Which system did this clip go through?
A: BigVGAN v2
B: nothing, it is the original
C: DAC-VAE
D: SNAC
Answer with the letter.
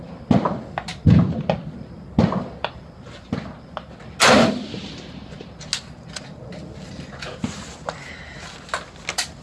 B